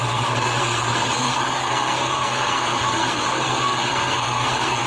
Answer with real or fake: fake